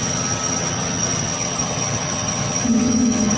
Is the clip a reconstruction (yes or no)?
yes